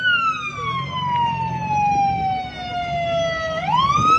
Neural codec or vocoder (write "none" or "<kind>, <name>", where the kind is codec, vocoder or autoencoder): none